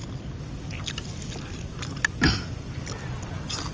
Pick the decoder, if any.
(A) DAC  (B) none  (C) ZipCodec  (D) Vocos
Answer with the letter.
B